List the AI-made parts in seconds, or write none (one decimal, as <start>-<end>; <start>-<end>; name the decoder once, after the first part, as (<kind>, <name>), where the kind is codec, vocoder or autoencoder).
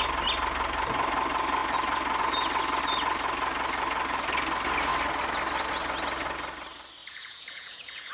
7.0-8.1 (vocoder, Vocos)